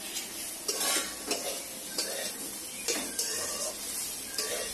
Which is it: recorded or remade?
recorded